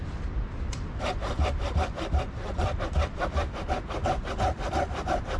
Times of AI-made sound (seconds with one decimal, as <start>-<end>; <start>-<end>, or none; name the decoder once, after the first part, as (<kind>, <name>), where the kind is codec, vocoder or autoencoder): 0.0-3.2 (vocoder, BigVGAN v2); 4.0-4.7

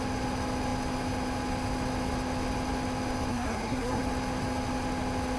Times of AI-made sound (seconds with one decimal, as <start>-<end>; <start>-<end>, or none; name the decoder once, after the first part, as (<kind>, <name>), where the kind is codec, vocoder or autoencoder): 3.3-4.0 (codec, SNAC)

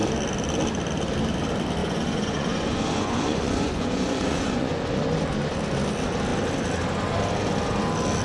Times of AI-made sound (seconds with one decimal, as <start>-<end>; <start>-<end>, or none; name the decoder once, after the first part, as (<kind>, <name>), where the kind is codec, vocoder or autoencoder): 1.8-4.8 (vocoder, Vocos)

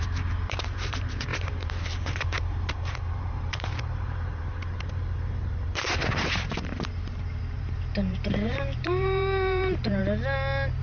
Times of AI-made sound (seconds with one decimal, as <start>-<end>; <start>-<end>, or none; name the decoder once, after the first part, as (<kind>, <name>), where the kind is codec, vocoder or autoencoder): 0.0-10.0 (vocoder, BigVGAN v2)

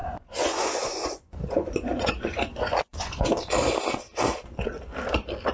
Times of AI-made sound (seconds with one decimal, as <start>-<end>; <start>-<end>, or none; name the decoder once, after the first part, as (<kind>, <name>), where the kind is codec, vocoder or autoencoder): 0.0-3.3 (vocoder, Vocos)